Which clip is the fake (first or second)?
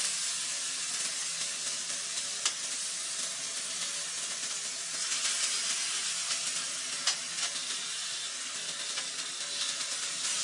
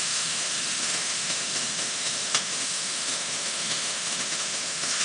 second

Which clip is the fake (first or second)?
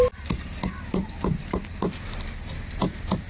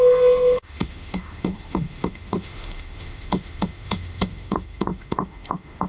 second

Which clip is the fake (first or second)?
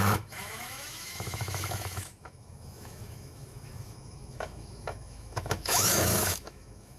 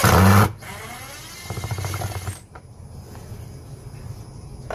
first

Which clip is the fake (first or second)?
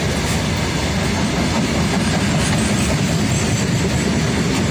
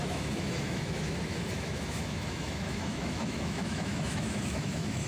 second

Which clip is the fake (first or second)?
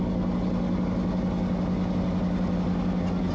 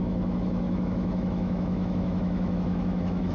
second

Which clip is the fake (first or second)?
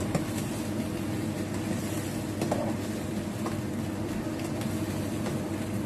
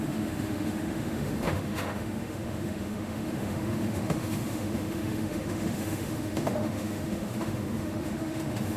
second